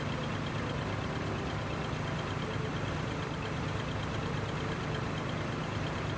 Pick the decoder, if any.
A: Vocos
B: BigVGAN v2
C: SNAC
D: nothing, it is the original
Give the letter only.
D